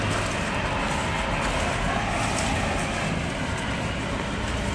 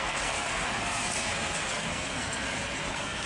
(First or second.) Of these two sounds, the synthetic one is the second